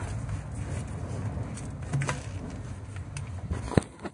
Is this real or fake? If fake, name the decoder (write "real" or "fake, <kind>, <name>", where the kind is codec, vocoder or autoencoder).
real